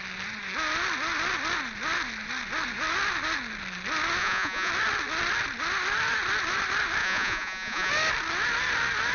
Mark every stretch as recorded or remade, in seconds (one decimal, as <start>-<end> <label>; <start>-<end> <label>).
0.0-4.2 recorded; 4.2-4.7 remade; 4.7-7.0 recorded; 7.0-7.9 remade; 7.9-9.1 recorded